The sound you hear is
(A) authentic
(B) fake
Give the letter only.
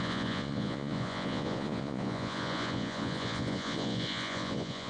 B